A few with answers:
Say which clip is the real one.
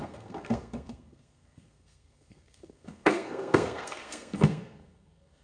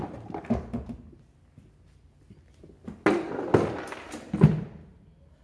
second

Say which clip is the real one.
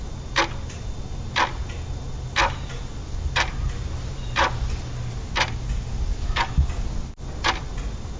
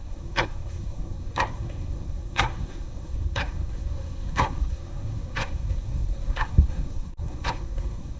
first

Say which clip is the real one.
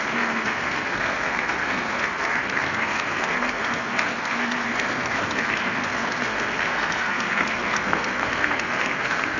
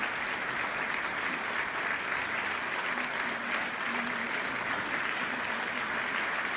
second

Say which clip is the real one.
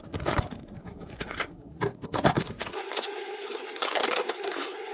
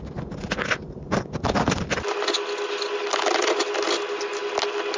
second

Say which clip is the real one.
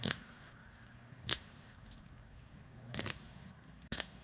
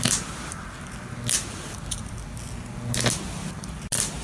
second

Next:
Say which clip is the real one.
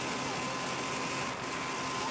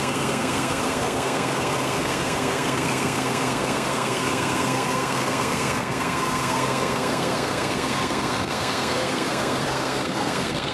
first